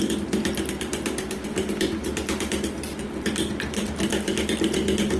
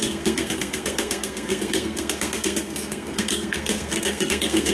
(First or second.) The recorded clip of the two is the first